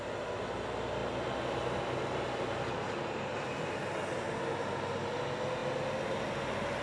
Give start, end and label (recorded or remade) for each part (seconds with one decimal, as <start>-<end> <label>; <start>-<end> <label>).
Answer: 0.0-6.8 recorded

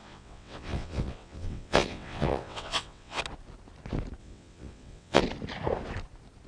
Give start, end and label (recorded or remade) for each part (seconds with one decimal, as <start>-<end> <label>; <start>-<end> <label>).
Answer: 0.0-3.2 remade; 3.2-4.2 recorded; 4.2-5.2 remade; 5.2-6.5 recorded

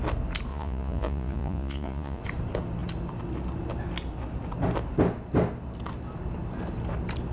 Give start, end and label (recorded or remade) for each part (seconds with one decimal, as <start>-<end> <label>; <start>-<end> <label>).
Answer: 0.0-0.5 recorded; 0.5-2.2 remade; 2.2-7.3 recorded